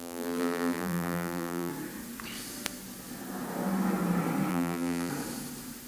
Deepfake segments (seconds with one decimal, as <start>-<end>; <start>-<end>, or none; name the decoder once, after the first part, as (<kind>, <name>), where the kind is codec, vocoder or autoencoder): 0.0-1.7 (vocoder, BigVGAN v2); 4.5-5.1